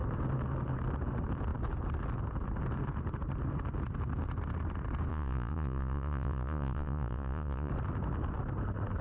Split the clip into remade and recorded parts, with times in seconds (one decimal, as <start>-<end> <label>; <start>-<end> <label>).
0.0-5.1 recorded; 5.1-7.7 remade; 7.7-9.0 recorded